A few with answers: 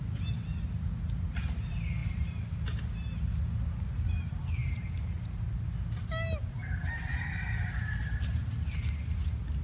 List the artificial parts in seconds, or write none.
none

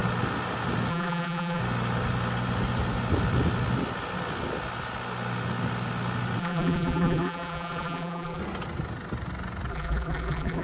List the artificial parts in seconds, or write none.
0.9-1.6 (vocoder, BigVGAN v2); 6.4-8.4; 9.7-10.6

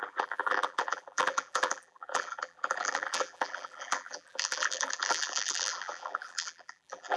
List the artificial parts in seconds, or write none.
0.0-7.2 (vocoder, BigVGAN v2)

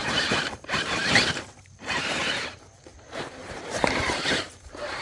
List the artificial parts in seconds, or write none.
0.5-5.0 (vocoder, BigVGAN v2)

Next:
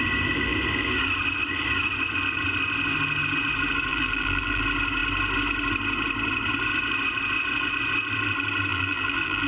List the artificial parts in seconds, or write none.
3.9-4.6 (vocoder, BigVGAN v2); 8.7-9.5